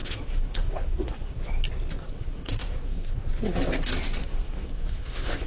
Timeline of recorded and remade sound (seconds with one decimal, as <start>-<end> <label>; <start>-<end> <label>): 0.0-1.3 remade; 1.3-2.0 recorded; 2.0-3.3 remade; 3.3-4.2 recorded; 4.2-5.5 remade